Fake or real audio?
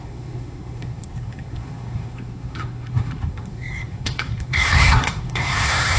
fake